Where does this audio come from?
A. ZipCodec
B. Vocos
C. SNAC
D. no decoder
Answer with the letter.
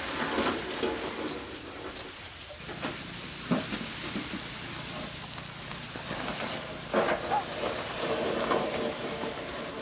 D